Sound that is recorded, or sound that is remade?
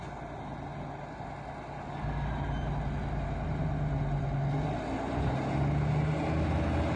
recorded